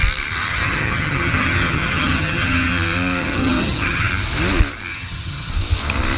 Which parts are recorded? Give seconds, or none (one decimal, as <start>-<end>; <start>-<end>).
0.0-0.5; 2.7-3.2; 4.1-4.9; 5.5-6.2